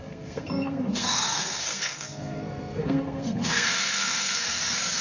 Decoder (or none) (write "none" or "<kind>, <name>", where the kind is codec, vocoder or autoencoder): codec, SNAC